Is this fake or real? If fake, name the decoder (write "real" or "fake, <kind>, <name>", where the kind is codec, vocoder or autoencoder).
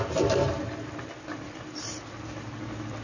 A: real